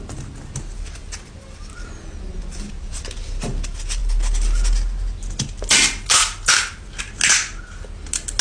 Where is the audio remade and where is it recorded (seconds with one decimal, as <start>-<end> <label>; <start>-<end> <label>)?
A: 0.0-8.4 recorded